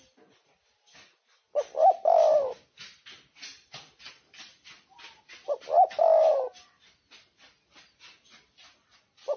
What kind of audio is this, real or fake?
real